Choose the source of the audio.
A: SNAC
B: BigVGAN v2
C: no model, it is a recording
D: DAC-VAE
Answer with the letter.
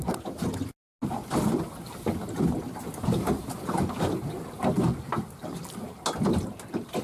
C